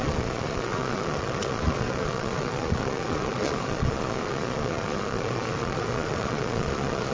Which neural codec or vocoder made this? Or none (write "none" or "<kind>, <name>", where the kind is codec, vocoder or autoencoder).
vocoder, Vocos